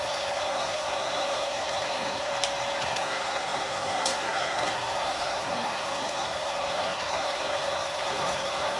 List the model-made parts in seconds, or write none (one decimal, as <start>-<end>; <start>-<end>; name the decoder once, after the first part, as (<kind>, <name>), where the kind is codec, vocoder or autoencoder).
0.0-2.3 (codec, SNAC); 2.8-8.8